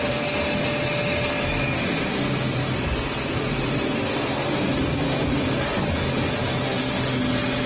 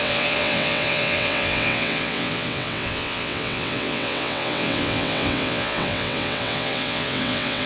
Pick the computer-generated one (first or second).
second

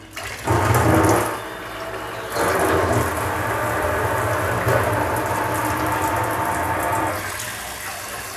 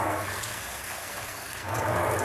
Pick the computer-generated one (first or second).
second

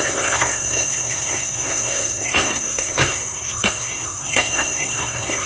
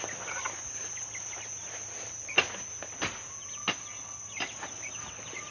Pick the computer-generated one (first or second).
first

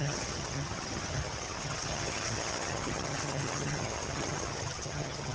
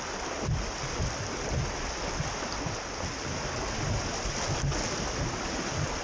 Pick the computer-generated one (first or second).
first